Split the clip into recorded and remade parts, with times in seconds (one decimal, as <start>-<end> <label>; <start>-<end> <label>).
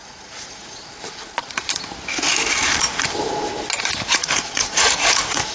0.0-0.8 remade; 0.8-4.1 recorded; 4.1-5.5 remade